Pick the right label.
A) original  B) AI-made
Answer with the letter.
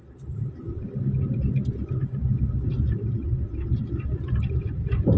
A